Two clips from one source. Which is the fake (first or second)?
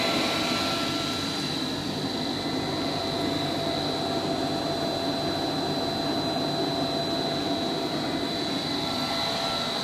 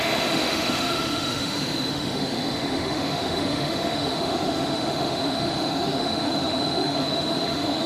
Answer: second